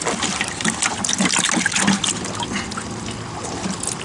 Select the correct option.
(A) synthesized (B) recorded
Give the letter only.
B